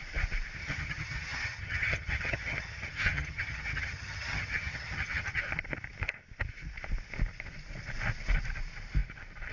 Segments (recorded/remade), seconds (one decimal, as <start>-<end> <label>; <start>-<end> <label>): 0.0-0.6 recorded; 0.6-5.4 remade; 5.4-9.5 recorded